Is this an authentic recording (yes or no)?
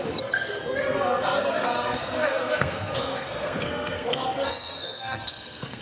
no